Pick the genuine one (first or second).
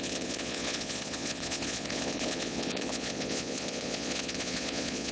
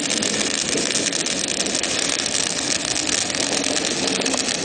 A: second